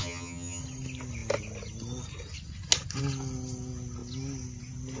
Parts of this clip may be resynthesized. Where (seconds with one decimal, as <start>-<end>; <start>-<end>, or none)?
0.0-0.6